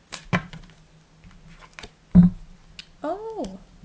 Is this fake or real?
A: real